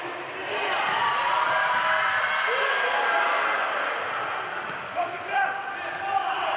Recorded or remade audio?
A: recorded